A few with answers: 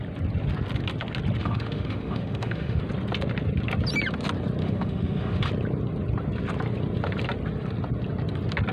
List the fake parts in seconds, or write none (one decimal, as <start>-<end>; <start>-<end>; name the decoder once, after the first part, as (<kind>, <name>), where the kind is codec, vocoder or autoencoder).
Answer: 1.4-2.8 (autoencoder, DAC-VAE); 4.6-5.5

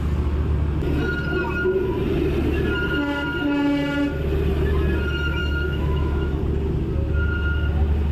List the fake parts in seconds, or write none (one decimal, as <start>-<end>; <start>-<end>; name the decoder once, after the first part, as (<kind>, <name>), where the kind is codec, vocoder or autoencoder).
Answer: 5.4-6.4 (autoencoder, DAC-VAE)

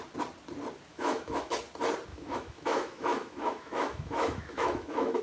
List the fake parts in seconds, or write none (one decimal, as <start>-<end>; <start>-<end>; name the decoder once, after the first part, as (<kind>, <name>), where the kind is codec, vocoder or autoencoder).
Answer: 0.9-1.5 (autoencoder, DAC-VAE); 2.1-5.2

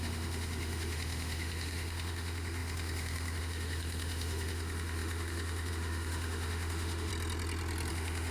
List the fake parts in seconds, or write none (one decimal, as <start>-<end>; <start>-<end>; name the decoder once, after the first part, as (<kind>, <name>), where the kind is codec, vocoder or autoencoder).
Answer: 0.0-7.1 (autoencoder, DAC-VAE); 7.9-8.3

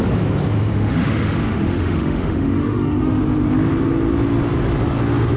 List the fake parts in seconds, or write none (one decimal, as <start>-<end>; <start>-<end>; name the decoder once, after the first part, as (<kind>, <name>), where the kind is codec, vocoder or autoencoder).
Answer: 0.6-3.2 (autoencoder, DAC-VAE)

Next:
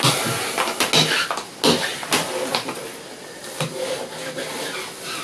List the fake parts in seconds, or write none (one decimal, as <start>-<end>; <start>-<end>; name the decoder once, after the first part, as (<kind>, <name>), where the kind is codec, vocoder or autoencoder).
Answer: none

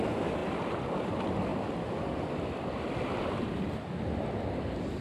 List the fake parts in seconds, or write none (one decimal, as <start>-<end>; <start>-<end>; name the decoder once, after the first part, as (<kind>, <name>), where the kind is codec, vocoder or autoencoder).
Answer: none

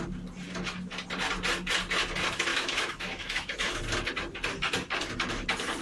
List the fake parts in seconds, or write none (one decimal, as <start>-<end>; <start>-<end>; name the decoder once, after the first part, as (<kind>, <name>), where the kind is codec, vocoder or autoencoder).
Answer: 2.5-3.8 (autoencoder, DAC-VAE)